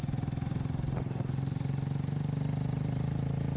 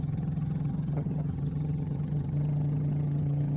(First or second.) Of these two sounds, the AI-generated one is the second